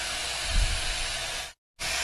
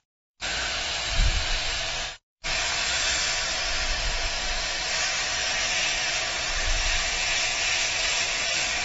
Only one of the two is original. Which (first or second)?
first